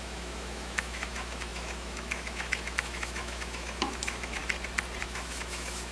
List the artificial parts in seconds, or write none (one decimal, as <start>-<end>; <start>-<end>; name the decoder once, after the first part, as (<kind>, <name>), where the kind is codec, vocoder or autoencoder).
0.0-4.4 (autoencoder, DAC-VAE); 5.0-5.9